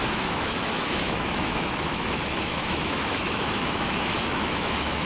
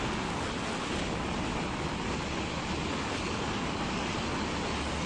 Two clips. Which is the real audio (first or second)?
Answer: second